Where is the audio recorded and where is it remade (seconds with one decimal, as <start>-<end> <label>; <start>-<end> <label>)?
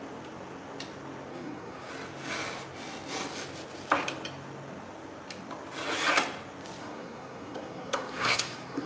0.0-1.3 recorded; 1.3-1.9 remade; 1.9-6.8 recorded; 6.8-8.9 remade